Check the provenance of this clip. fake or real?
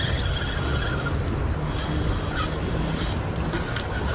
real